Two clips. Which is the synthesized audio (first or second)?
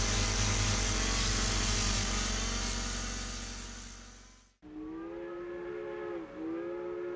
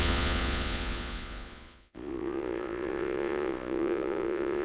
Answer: second